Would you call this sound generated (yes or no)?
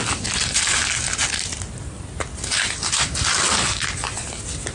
no